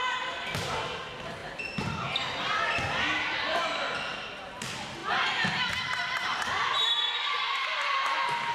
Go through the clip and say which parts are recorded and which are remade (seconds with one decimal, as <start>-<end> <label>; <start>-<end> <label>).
0.0-6.3 remade; 6.3-6.9 recorded; 6.9-8.5 remade